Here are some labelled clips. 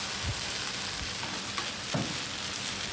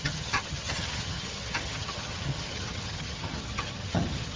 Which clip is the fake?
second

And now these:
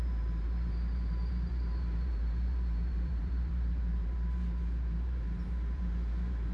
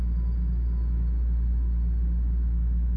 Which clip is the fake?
first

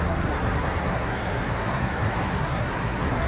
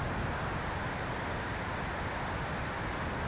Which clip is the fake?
first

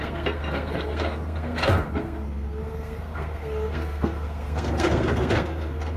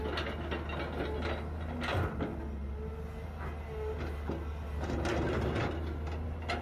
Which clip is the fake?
first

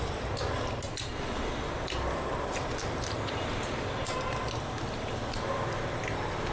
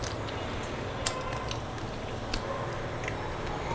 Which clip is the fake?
first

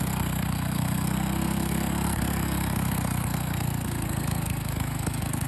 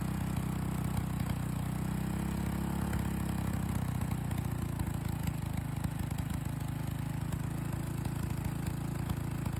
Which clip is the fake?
first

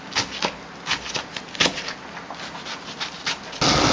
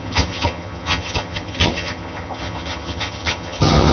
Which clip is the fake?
second